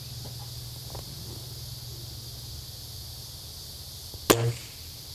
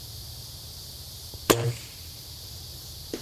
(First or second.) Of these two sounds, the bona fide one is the first